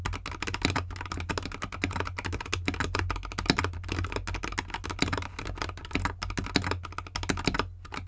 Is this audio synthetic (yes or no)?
no